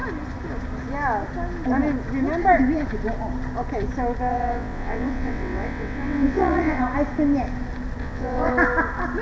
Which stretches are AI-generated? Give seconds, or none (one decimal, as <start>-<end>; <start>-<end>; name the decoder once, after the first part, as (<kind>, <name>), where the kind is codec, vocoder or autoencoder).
4.3-6.8 (vocoder, WaveNeXt); 8.0-8.5

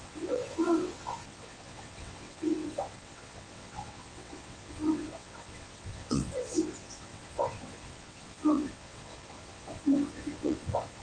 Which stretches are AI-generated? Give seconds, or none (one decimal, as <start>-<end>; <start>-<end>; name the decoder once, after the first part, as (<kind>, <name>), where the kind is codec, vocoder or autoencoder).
0.0-11.0 (vocoder, WaveNeXt)

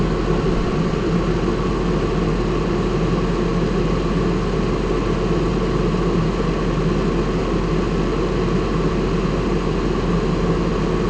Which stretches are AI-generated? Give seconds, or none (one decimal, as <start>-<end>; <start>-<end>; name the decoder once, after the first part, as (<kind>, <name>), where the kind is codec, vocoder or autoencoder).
none

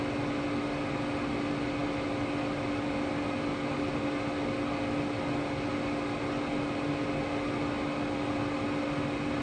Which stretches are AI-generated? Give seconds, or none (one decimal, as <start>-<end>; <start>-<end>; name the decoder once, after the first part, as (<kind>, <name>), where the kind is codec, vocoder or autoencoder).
none

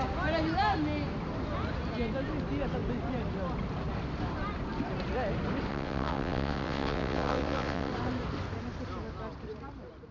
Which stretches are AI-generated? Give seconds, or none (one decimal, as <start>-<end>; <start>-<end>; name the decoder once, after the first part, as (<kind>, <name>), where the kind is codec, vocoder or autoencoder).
5.7-7.9 (vocoder, WaveNeXt)

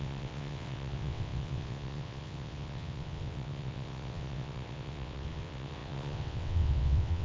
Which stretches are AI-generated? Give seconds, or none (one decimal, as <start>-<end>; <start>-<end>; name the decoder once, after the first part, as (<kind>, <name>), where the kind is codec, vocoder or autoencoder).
0.0-7.2 (vocoder, WaveNeXt)

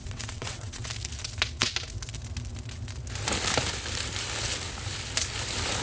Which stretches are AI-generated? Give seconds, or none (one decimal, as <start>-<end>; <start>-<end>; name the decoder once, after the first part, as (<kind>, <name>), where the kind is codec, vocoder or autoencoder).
0.0-0.9 (vocoder, WaveNeXt)